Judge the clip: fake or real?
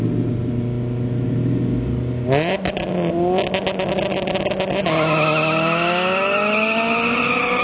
real